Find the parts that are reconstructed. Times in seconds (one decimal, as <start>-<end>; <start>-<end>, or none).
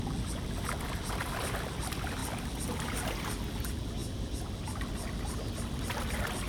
1.2-1.8